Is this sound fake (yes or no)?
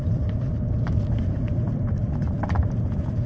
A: no